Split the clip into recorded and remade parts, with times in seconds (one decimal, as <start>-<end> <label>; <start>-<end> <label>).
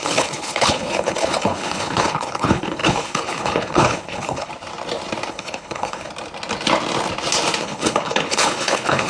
0.0-4.5 remade; 4.5-5.3 recorded; 5.3-6.1 remade; 6.1-7.6 recorded; 7.6-9.1 remade